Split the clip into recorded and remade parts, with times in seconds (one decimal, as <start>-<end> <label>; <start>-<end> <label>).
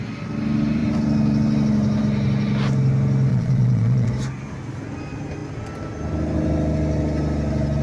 0.0-3.3 recorded; 3.3-4.1 remade; 4.1-7.8 recorded